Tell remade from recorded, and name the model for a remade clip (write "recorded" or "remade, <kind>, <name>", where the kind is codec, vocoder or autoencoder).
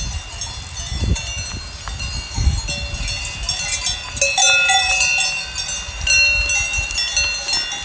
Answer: recorded